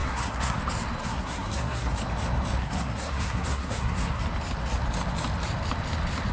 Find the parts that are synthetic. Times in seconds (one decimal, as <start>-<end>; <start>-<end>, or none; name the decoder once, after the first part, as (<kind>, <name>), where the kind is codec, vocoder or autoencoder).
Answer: 0.0-0.6 (codec, SNAC); 1.0-2.0; 2.6-4.2